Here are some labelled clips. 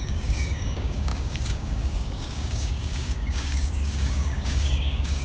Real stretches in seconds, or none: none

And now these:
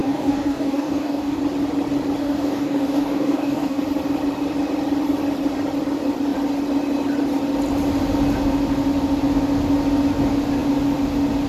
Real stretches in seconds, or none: 1.4-2.2; 3.8-11.5

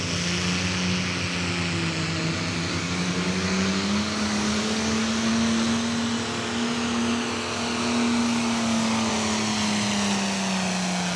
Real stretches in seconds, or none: 0.0-2.7; 5.3-8.2; 9.1-11.2

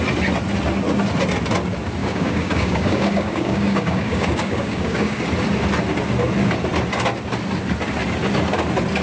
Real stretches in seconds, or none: 0.0-2.0; 5.2-9.0

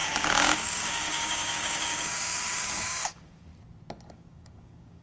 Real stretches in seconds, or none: 3.5-4.1